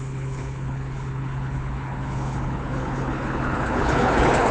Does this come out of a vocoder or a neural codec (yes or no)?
yes